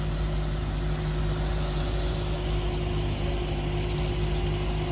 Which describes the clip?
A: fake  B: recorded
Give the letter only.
B